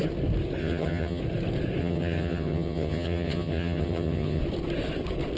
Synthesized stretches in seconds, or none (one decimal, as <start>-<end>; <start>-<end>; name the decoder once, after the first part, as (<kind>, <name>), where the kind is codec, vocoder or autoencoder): 0.6-1.2 (vocoder, HiFi-GAN); 1.8-4.4